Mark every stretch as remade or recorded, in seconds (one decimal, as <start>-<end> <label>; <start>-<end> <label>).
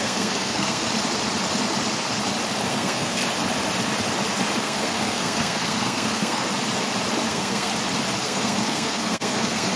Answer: 0.0-0.9 remade; 0.9-2.7 recorded; 2.7-3.2 remade; 3.2-4.6 recorded; 4.6-6.5 remade; 6.5-7.3 recorded; 7.3-7.7 remade; 7.7-8.2 recorded; 8.2-9.8 remade